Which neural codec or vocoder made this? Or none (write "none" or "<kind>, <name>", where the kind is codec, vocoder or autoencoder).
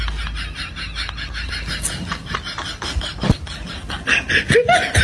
none